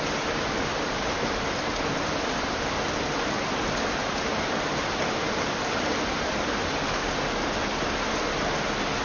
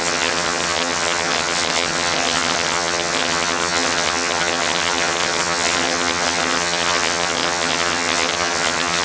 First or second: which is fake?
second